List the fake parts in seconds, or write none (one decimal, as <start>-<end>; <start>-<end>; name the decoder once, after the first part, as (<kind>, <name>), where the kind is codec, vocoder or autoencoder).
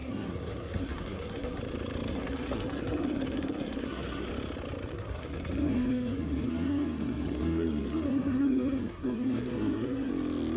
0.0-1.6 (codec, SNAC); 2.1-4.3; 4.9-10.1